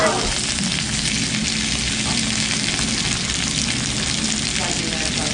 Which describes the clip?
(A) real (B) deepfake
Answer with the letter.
A